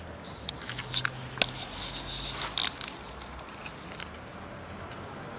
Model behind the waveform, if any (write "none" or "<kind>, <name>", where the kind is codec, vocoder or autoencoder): none